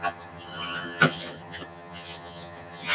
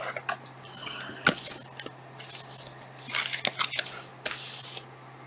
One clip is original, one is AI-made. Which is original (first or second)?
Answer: second